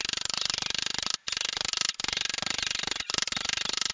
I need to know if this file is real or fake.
real